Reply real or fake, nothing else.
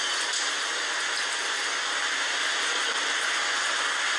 real